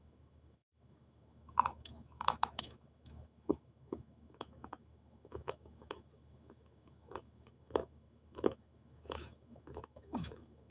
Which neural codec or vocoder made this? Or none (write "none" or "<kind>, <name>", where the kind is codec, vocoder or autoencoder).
autoencoder, DAC-VAE